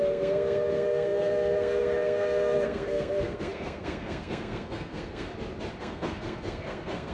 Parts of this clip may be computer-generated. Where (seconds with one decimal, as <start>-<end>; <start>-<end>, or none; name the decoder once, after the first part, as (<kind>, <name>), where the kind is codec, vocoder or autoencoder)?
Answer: 0.0-5.3 (codec, SNAC); 5.8-7.1